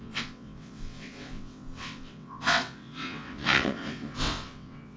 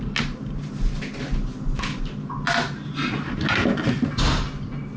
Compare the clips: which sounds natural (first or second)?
second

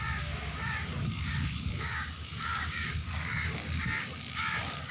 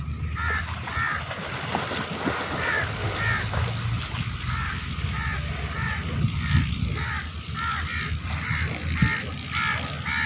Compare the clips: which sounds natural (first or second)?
second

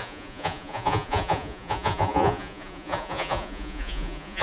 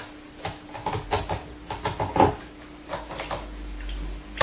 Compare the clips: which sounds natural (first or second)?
second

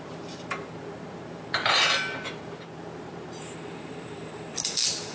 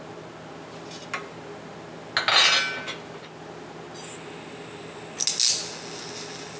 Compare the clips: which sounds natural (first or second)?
second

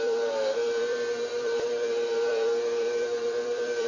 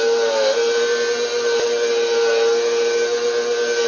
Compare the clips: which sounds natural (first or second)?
second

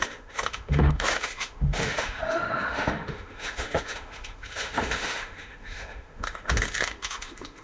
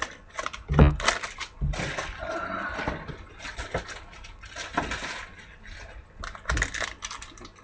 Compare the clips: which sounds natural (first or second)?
second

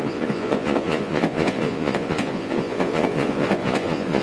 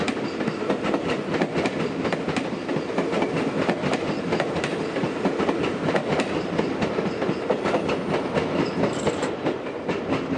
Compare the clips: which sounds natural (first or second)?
second